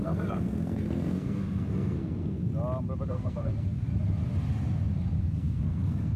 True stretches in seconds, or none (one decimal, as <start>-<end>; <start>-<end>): 2.5-3.1; 3.9-5.2

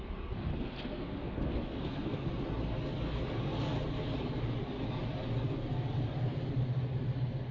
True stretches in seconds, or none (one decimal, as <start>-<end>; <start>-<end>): 0.0-0.5; 2.3-7.5

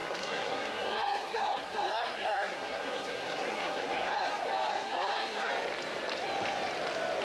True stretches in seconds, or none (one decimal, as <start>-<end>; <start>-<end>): 4.3-4.7; 5.5-7.2

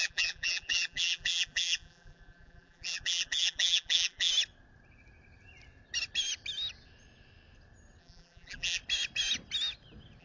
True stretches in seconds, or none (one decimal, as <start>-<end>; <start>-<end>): 4.3-8.0; 8.8-10.2